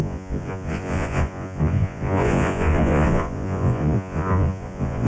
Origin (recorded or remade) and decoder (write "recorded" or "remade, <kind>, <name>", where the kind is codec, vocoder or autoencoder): remade, vocoder, Vocos